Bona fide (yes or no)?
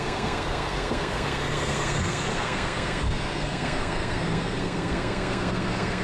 no